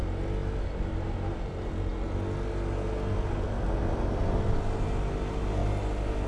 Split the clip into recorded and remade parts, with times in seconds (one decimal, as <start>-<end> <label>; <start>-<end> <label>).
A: 0.0-6.3 recorded